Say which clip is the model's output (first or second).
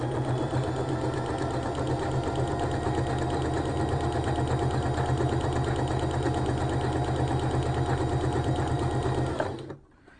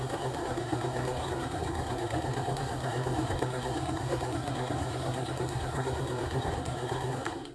second